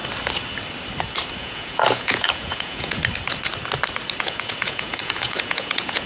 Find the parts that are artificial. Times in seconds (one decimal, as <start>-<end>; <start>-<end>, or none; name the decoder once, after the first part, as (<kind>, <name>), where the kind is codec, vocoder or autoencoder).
1.4-3.0 (vocoder, Vocos); 4.2-6.1